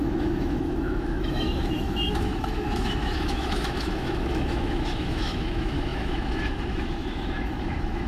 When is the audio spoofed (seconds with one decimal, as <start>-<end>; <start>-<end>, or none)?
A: 0.0-8.1